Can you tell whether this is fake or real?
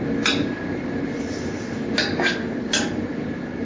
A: real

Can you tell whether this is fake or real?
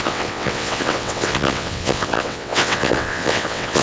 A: fake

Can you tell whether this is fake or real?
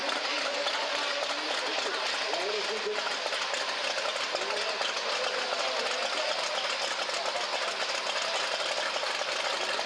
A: real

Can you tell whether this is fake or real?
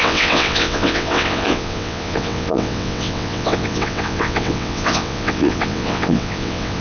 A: fake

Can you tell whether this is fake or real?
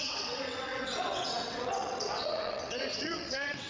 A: fake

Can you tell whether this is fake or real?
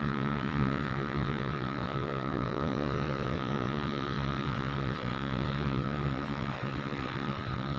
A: fake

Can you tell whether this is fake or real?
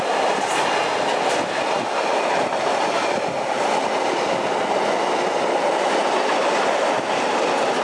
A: real